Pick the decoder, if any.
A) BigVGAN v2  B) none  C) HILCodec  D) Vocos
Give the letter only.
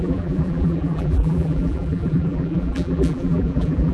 A